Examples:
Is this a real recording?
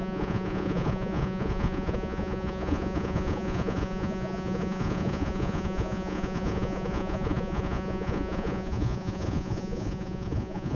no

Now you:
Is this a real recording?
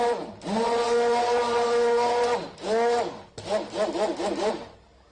yes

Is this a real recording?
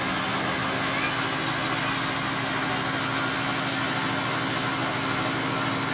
yes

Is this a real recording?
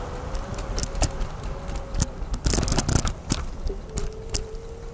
yes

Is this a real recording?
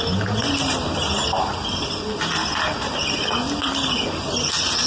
yes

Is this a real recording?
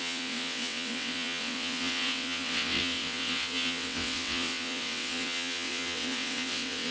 no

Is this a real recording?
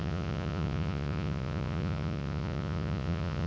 no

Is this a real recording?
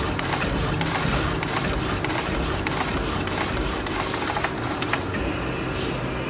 yes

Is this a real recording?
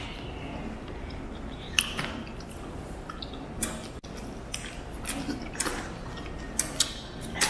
yes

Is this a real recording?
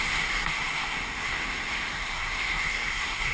no